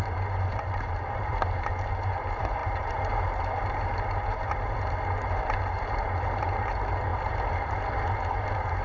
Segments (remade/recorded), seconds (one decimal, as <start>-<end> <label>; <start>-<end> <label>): 0.0-8.8 remade